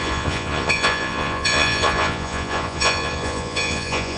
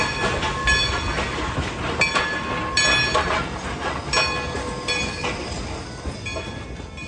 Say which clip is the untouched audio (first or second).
second